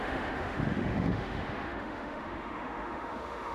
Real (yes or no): no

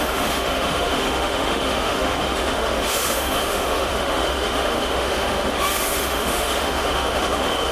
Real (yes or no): no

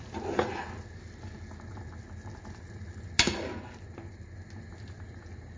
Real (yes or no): yes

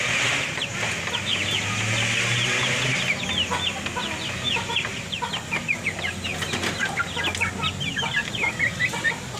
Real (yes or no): yes